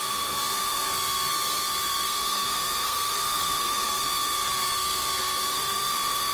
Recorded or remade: remade